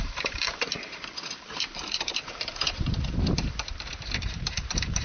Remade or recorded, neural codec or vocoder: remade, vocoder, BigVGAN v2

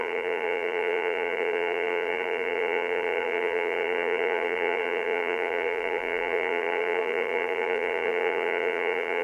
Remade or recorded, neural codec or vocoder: remade, vocoder, BigVGAN v2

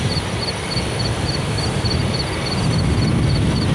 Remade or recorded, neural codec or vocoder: recorded